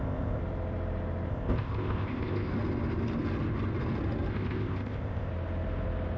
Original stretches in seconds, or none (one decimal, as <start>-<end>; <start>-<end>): 0.4-1.3; 2.5-4.3; 5.3-6.2